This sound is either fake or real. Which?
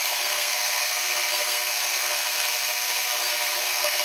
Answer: fake